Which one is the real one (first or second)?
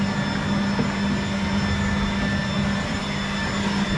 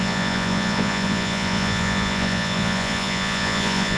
first